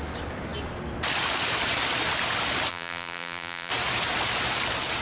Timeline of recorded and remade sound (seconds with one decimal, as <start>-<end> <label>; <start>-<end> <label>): 0.0-2.7 recorded; 2.7-3.7 remade; 3.7-5.0 recorded